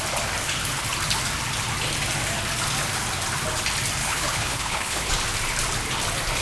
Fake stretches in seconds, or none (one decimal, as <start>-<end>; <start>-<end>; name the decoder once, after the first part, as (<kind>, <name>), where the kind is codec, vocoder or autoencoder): 4.0-5.1 (codec, HILCodec)